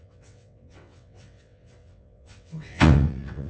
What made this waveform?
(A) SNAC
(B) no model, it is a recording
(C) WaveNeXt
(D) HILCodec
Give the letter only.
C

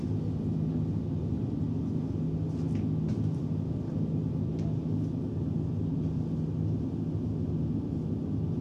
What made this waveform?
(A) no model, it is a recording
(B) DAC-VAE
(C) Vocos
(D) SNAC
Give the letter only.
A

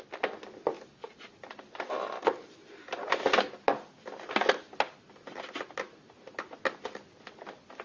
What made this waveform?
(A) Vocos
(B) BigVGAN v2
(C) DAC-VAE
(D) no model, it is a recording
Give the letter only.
D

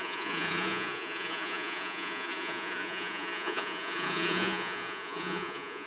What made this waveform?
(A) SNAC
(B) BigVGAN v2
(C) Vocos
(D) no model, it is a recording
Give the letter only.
C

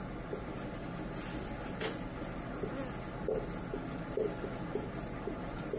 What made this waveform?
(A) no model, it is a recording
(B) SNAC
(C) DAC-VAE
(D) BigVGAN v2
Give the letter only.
A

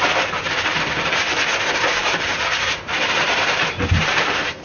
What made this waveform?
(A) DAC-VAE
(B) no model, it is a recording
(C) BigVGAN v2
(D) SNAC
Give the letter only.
C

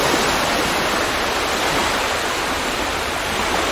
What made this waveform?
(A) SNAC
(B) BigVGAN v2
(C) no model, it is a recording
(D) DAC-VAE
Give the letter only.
C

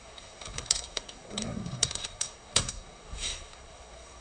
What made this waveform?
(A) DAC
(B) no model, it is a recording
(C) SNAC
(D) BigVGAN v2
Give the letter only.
C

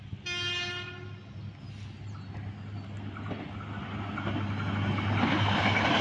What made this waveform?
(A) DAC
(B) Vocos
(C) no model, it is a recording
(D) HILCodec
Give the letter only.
C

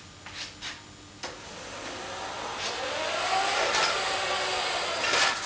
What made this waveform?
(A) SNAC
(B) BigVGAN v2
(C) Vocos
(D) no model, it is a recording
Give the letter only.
D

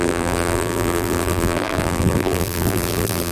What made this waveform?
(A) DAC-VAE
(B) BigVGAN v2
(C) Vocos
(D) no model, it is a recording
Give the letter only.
B